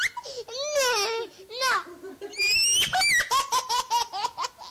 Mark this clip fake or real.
real